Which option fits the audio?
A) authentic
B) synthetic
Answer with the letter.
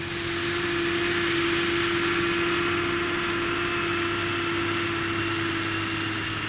A